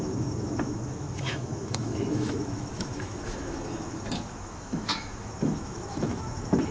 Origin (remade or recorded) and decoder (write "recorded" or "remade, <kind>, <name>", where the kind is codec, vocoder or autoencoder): remade, autoencoder, DAC-VAE